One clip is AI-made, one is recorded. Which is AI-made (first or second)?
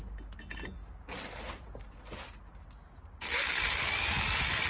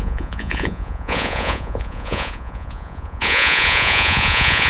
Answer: second